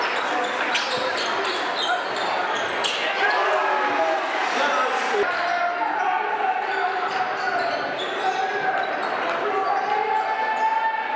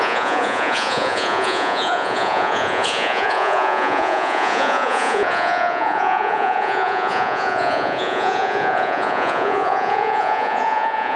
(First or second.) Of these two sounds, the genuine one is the first